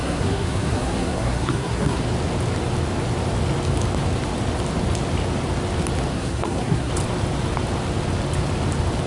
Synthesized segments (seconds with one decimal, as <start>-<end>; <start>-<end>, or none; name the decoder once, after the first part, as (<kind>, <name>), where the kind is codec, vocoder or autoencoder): 0.0-2.0 (codec, SNAC); 6.1-6.9